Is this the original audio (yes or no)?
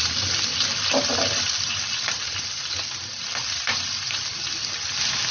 yes